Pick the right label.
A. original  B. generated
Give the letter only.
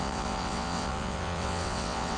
B